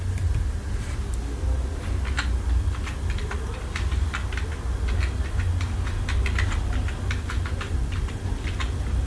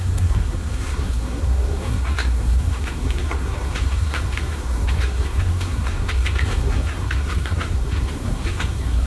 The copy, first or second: second